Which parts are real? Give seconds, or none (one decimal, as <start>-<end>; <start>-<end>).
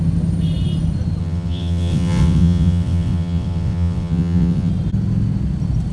0.0-1.2; 4.7-5.9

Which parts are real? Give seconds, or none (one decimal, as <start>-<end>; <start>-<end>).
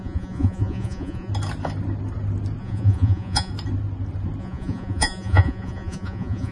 1.3-2.6; 3.5-4.4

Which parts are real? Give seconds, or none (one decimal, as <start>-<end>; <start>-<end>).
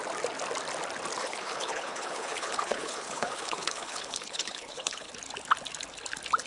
0.0-1.2; 5.1-6.5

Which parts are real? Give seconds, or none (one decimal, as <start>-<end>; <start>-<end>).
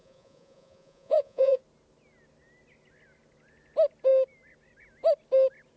1.6-5.8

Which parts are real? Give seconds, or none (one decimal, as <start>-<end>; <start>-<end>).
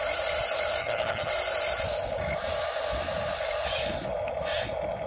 0.0-0.8; 1.3-5.1